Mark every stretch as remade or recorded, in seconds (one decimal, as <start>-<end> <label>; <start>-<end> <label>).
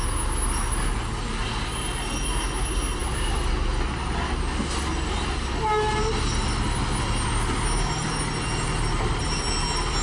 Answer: 0.0-10.0 recorded